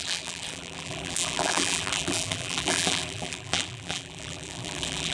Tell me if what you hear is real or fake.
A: fake